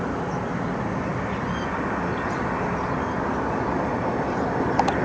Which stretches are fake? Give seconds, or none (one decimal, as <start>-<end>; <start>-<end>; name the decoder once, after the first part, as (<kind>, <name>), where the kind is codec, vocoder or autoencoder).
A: none